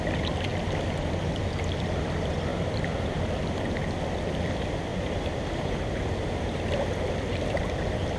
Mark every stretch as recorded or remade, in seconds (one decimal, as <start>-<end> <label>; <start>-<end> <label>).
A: 0.0-2.5 recorded; 2.5-3.2 remade; 3.2-4.9 recorded; 4.9-6.6 remade; 6.6-8.2 recorded